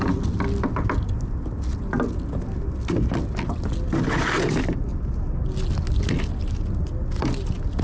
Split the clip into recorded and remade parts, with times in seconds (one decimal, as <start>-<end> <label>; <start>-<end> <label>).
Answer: 0.0-7.8 recorded